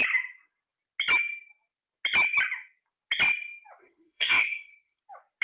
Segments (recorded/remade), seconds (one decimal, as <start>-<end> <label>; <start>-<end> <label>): 0.0-3.8 recorded; 3.8-5.0 remade; 5.0-5.4 recorded